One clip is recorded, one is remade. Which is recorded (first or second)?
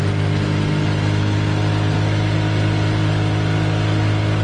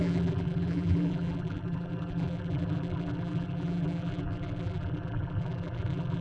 first